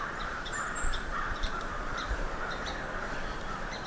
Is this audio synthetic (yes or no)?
yes